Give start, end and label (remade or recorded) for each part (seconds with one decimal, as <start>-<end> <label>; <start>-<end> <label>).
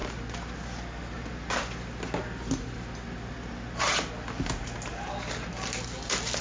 0.0-6.4 recorded